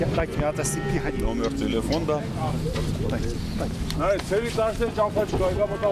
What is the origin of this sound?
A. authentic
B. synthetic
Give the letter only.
A